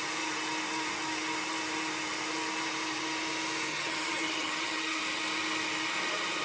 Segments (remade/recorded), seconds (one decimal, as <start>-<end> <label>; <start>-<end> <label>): 0.0-3.7 recorded; 3.7-5.0 remade; 5.0-6.4 recorded